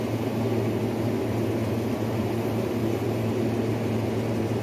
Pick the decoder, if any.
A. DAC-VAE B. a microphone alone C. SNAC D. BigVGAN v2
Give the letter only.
B